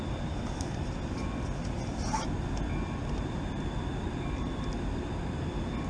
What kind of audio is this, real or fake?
real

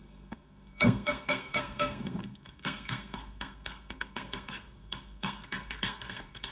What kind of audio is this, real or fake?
fake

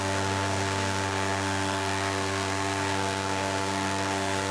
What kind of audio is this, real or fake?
fake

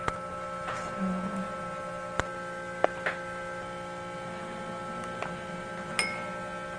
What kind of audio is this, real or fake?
real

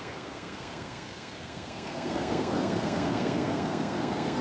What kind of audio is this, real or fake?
fake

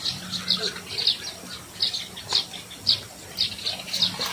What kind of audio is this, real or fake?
real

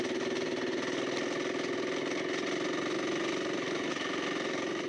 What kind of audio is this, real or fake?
real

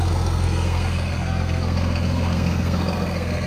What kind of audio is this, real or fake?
fake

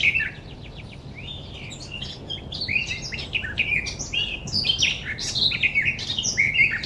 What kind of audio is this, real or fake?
real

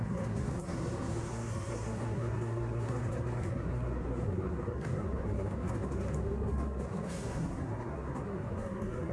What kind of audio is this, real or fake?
fake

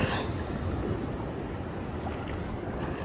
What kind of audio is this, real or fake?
real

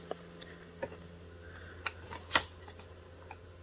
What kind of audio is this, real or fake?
real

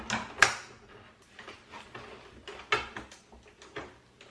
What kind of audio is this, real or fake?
real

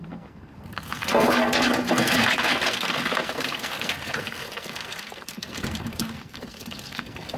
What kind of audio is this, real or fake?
fake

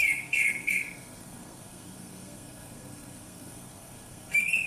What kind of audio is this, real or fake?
fake